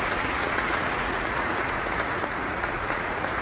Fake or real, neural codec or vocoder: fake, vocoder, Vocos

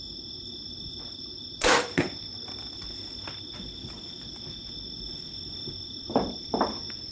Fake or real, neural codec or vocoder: real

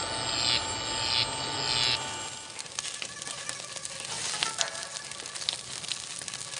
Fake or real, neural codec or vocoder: real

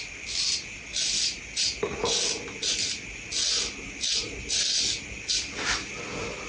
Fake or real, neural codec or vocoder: real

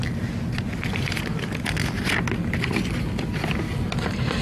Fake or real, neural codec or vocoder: real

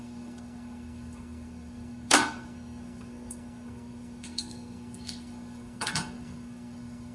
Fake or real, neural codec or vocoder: fake, codec, SNAC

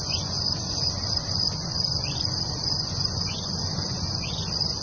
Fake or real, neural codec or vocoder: fake, vocoder, Vocos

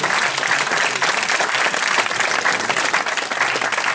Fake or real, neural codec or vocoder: real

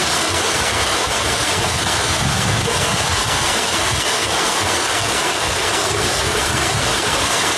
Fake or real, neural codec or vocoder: fake, codec, SNAC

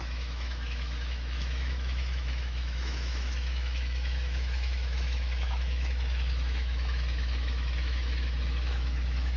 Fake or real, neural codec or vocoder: fake, autoencoder, DAC-VAE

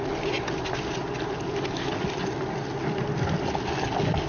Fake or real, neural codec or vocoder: real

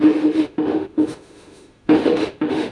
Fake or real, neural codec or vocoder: fake, autoencoder, DAC-VAE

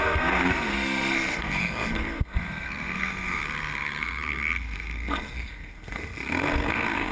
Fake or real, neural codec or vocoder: fake, codec, SNAC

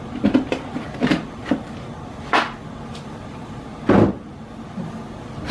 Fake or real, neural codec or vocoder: real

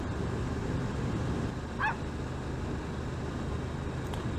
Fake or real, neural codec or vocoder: real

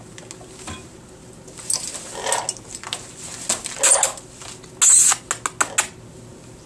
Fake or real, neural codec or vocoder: real